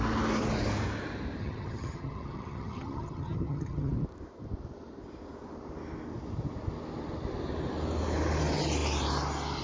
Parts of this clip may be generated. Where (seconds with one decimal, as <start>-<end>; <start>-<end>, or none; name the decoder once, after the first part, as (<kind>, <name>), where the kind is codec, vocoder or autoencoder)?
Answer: 1.4-3.9 (vocoder, HiFi-GAN)